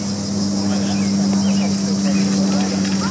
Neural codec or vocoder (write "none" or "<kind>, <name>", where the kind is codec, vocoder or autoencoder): none